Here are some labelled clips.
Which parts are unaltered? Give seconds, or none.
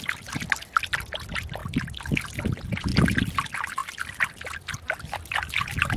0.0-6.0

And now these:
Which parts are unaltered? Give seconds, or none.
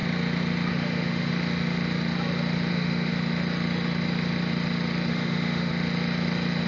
0.0-0.7; 1.3-2.7; 3.1-5.1; 5.7-6.7